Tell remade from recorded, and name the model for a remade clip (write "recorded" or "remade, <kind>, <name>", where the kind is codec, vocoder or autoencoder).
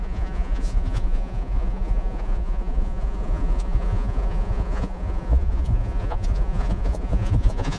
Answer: remade, vocoder, Vocos